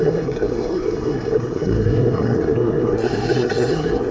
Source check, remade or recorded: remade